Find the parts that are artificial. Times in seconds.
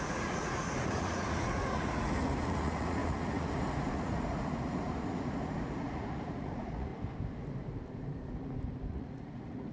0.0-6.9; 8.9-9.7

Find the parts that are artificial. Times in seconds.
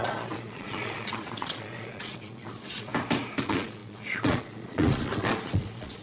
0.0-2.9; 3.4-6.0